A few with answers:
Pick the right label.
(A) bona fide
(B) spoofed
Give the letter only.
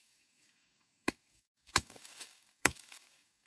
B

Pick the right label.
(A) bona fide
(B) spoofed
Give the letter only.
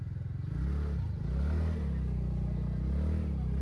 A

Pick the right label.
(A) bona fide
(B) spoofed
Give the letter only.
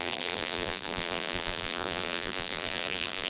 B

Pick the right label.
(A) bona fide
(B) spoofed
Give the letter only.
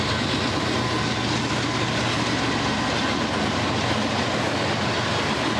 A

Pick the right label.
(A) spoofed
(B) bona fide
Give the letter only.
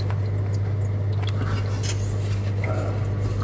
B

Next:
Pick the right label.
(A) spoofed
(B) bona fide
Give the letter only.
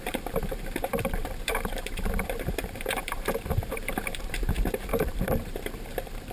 A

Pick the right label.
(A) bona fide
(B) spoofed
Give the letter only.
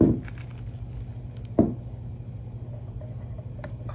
A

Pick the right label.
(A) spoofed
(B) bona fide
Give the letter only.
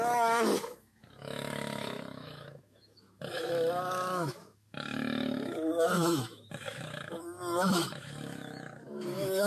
A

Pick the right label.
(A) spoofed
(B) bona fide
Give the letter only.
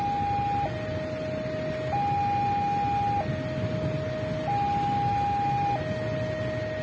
B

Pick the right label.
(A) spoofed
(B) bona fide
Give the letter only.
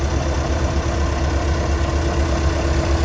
B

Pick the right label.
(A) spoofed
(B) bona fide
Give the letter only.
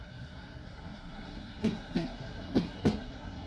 A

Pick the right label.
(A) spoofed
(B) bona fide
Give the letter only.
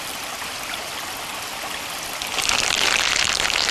B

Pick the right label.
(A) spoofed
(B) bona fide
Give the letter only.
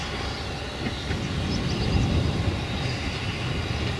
B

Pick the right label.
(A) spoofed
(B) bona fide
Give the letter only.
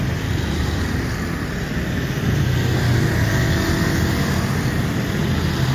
B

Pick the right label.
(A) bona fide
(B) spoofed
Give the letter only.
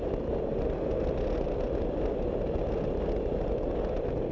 A